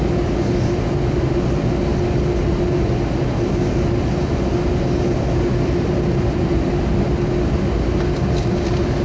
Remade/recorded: recorded